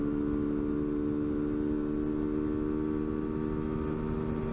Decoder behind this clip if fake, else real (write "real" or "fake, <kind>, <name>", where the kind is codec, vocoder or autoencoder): real